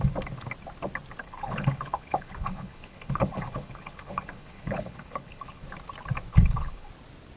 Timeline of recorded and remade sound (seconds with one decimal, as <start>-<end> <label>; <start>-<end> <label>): 0.0-1.2 recorded; 1.2-5.6 remade; 5.6-6.3 recorded; 6.3-6.9 remade; 6.9-7.4 recorded